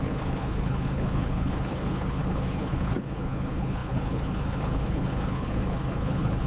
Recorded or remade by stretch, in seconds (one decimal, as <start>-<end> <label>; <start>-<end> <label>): 0.0-6.5 remade